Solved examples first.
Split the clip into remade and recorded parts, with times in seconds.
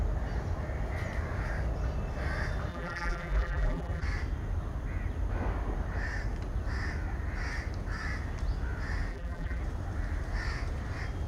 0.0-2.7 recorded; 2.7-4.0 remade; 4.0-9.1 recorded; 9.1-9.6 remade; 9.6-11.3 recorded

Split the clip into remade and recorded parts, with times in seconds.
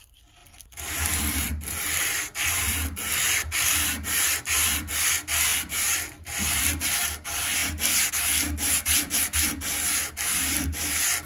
0.0-0.4 recorded; 0.4-2.4 remade; 2.4-7.6 recorded; 7.6-8.1 remade; 8.1-11.3 recorded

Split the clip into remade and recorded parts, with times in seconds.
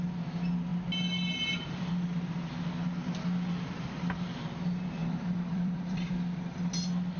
0.0-5.0 recorded; 5.0-6.1 remade; 6.1-7.2 recorded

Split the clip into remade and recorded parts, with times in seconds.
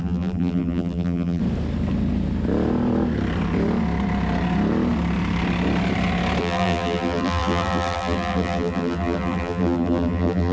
0.0-1.4 remade; 1.4-6.4 recorded; 6.4-10.5 remade